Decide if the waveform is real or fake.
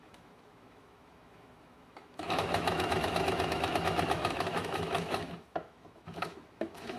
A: fake